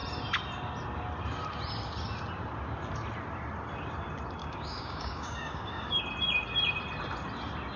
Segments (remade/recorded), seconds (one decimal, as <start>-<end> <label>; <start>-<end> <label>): 0.0-4.4 recorded; 4.4-6.0 remade; 6.0-7.8 recorded